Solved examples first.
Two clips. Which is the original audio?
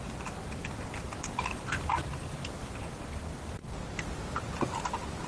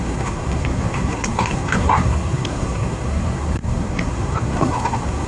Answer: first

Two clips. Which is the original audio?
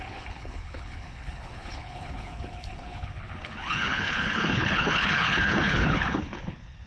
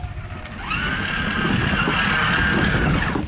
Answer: second